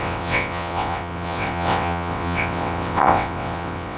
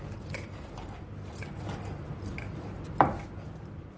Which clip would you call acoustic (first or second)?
second